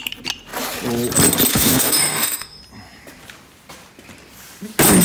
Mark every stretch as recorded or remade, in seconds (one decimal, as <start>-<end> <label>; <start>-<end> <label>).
0.0-1.5 recorded; 1.5-2.6 remade; 2.6-5.0 recorded